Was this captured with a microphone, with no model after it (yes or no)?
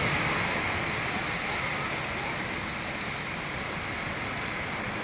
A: yes